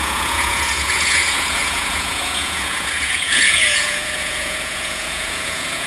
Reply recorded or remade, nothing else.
remade